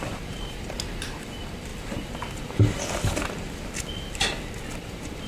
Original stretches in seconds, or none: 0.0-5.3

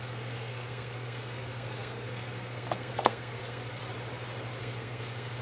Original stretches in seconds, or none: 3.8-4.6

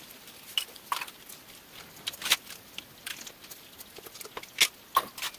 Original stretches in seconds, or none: 0.0-5.4

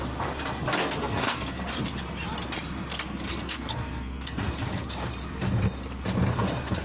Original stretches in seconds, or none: 0.0-1.0; 1.7-2.9; 4.5-6.8